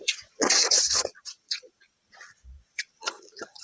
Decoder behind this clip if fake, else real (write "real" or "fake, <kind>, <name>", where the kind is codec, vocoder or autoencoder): fake, vocoder, Vocos